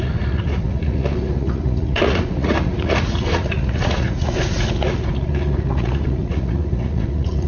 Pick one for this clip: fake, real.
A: fake